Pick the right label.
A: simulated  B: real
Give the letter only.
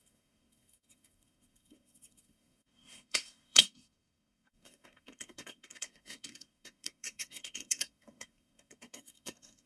A